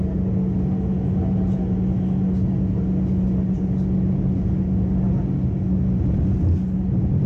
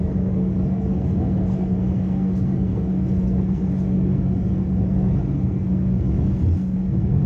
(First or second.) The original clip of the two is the first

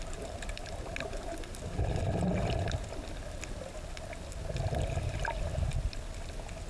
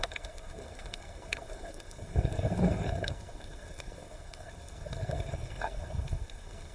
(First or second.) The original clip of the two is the first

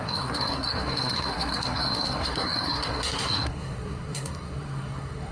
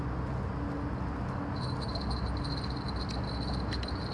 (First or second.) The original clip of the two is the second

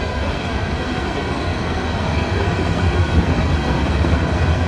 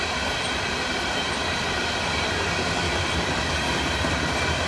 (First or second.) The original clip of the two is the second